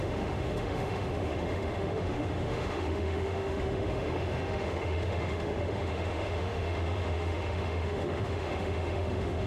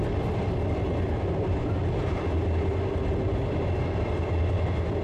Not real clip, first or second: first